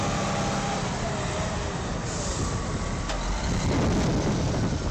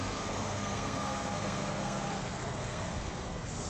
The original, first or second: first